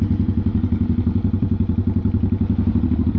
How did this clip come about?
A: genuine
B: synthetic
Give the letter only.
B